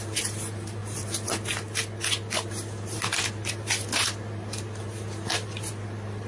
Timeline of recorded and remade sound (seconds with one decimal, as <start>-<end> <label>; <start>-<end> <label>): 0.0-6.3 recorded

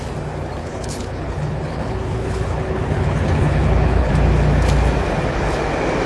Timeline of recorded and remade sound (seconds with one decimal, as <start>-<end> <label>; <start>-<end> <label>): 0.0-0.6 recorded; 0.6-4.1 remade; 4.1-6.1 recorded

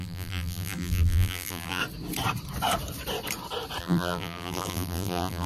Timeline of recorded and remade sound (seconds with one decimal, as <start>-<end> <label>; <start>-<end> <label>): 0.0-1.8 remade; 1.8-3.8 recorded; 3.8-5.5 remade

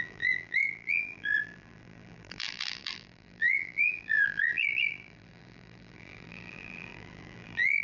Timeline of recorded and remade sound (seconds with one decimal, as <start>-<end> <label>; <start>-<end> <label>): 0.0-7.8 remade